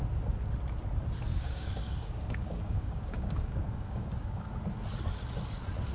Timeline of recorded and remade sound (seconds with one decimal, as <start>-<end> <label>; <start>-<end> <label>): 0.0-1.3 recorded; 1.3-4.5 remade; 4.5-5.9 recorded